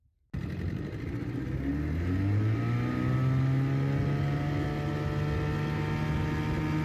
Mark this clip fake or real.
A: real